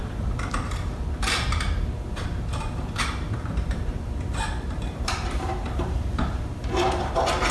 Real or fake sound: fake